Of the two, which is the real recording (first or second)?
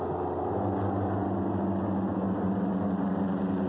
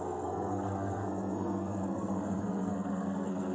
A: first